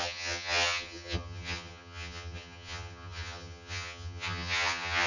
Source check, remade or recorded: remade